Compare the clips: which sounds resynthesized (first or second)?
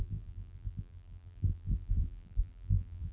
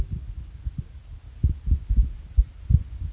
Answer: first